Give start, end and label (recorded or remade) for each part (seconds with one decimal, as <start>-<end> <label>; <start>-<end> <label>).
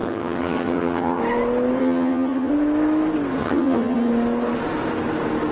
0.0-1.2 remade; 1.2-1.8 recorded; 1.8-2.5 remade; 2.5-3.4 recorded; 3.4-4.1 remade; 4.1-5.5 recorded